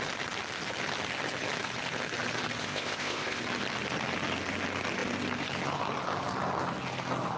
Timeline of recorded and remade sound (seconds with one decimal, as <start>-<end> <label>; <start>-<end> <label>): 0.0-2.6 recorded; 2.6-3.4 remade; 3.4-7.4 recorded